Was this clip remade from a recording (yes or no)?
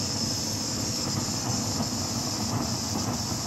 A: yes